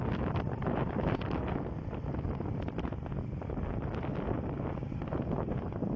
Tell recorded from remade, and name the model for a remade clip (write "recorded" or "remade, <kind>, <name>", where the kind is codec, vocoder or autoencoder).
recorded